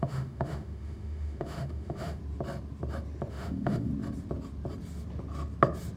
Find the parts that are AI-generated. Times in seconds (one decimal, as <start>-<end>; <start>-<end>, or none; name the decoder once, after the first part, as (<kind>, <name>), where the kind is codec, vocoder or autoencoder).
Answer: 0.0-2.2 (autoencoder, DAC-VAE); 3.3-3.9